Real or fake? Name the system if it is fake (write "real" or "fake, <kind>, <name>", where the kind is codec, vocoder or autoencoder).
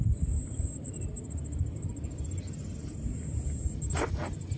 real